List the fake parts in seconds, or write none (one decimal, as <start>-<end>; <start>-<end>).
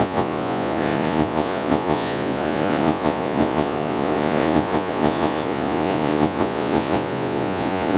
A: 0.0-8.0